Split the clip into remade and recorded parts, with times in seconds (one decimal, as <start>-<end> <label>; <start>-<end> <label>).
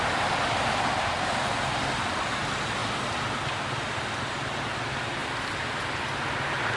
0.0-6.8 recorded